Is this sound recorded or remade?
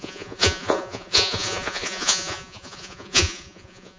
remade